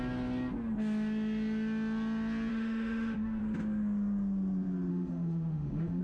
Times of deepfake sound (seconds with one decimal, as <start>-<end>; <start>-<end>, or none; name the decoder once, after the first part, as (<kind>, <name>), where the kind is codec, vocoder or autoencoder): 2.5-3.4 (autoencoder, DAC-VAE); 4.9-6.0